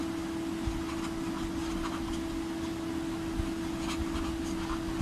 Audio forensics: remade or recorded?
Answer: recorded